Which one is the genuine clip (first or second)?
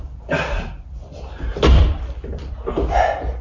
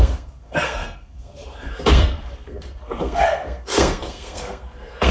first